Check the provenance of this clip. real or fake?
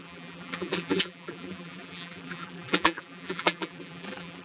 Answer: fake